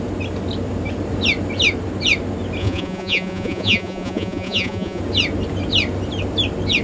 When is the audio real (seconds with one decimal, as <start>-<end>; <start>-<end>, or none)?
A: 0.0-2.6; 5.0-6.8